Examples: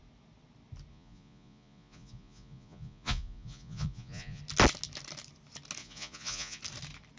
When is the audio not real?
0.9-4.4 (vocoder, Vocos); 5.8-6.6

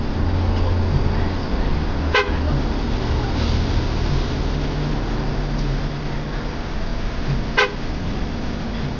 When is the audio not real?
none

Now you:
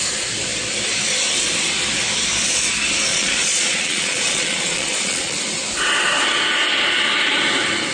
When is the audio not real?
3.1-5.4 (vocoder, Vocos)

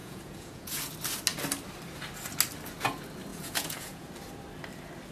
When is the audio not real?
0.0-0.9 (vocoder, Vocos); 3.3-4.1

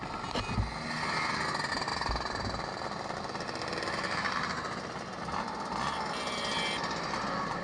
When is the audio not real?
none

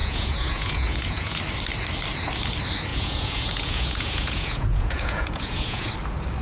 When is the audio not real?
0.0-1.4 (vocoder, Vocos); 2.9-5.9